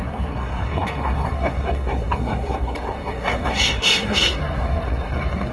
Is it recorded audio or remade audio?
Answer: remade